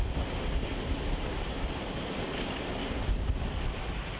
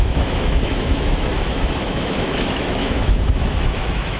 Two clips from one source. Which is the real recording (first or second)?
first